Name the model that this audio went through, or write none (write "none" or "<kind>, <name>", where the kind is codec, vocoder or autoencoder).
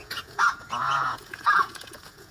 vocoder, Vocos